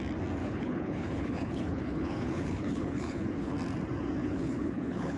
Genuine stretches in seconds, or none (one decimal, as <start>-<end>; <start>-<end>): 0.0-0.4; 3.5-4.2